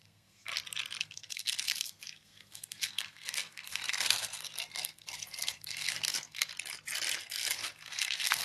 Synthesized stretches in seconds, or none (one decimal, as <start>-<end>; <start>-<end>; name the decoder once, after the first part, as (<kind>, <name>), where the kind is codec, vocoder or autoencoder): 0.0-0.5 (codec, SNAC); 1.0-6.5; 7.2-8.4